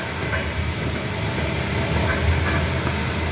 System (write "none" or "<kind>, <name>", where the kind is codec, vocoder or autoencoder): none